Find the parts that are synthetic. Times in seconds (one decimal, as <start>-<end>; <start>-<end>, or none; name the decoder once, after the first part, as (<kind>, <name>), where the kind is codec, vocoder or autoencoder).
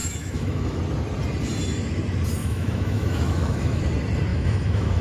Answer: 0.0-0.8 (autoencoder, DAC-VAE); 2.4-3.8; 4.3-5.0